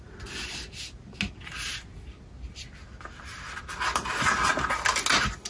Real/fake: real